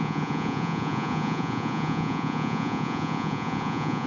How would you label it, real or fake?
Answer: fake